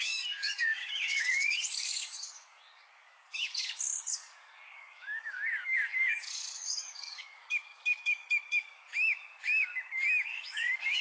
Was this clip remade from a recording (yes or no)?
yes